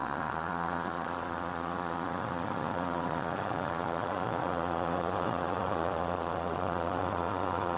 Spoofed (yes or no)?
yes